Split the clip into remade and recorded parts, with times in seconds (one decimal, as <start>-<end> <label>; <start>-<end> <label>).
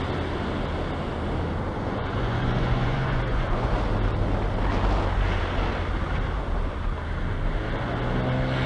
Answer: 0.0-1.7 recorded; 1.7-3.7 remade; 3.7-8.7 recorded